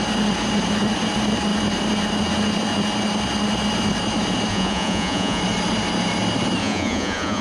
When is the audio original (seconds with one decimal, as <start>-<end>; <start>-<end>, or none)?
0.0-4.5; 5.4-6.6